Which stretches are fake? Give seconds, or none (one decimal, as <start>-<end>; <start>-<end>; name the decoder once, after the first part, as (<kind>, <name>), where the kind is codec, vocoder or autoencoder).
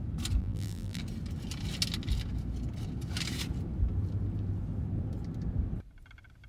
0.4-1.0 (vocoder, BigVGAN v2)